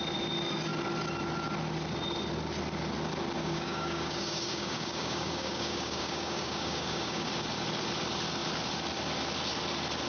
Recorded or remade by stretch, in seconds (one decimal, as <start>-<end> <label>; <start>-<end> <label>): 0.0-3.4 recorded; 3.4-7.3 remade; 7.3-10.1 recorded